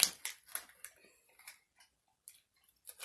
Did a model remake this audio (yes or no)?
no